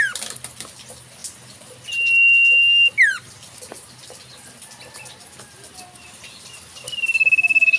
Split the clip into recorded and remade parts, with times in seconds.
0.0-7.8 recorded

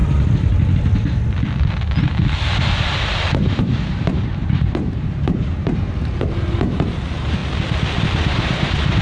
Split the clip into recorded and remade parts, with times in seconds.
0.0-3.6 recorded; 3.6-7.4 remade; 7.4-8.0 recorded; 8.0-9.0 remade